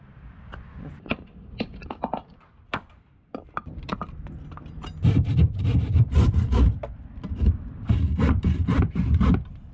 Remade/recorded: remade